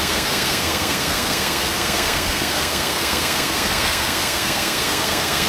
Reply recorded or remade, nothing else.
remade